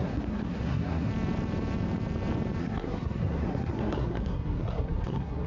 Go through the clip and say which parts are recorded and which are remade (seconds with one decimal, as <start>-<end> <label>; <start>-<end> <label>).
0.0-1.1 remade; 1.1-2.6 recorded; 2.6-5.5 remade